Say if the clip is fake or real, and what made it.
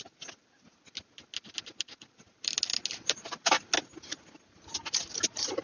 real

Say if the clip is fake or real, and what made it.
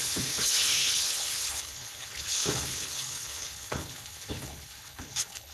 fake, codec, HILCodec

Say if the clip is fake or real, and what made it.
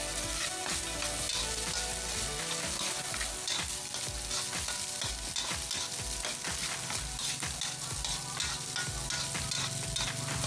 real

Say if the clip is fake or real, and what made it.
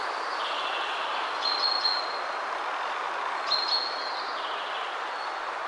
real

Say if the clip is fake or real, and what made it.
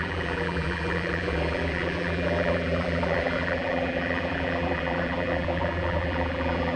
fake, vocoder, BigVGAN v2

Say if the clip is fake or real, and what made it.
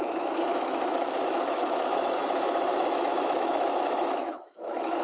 fake, autoencoder, DAC-VAE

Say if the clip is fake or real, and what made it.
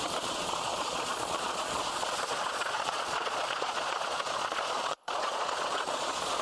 fake, vocoder, Vocos